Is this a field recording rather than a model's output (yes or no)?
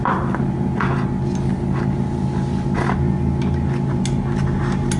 yes